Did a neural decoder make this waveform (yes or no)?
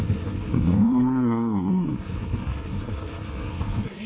yes